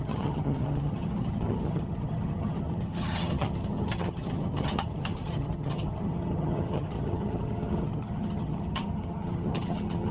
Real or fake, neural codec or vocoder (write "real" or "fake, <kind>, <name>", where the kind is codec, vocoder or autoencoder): fake, vocoder, HiFi-GAN